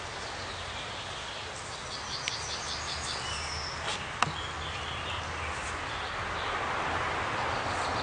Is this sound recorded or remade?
recorded